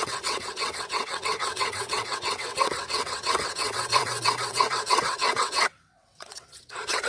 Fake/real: fake